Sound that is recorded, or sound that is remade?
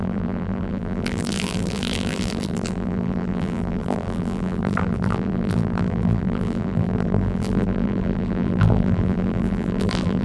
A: remade